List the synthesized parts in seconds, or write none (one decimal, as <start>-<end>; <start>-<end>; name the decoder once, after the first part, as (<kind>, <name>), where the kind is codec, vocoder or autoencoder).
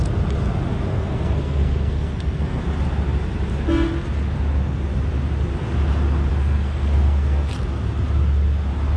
0.9-2.6 (codec, SNAC); 6.3-7.5